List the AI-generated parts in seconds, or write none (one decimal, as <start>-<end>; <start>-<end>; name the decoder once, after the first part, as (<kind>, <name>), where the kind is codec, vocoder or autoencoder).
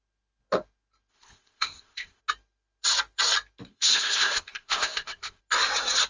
1.1-2.2 (codec, ZipCodec); 3.7-5.4